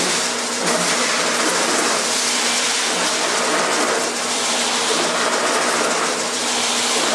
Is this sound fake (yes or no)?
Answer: yes